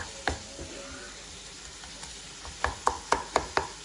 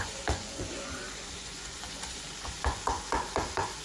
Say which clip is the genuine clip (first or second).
first